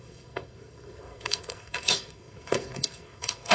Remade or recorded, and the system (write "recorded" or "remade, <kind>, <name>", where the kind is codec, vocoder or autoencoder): remade, codec, SNAC